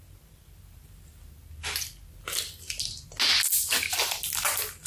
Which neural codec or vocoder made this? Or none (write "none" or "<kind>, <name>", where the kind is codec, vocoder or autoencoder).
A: none